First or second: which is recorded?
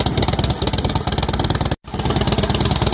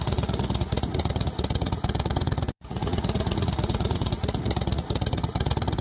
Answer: first